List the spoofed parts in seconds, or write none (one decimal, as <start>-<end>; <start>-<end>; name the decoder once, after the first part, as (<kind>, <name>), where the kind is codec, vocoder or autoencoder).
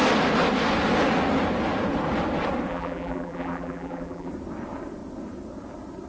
2.7-4.3 (vocoder, BigVGAN v2)